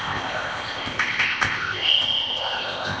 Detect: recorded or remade remade